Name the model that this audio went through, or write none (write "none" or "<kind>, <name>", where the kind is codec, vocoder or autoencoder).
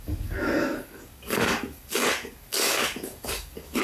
codec, DAC